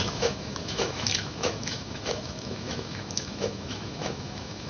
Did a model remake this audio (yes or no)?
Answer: yes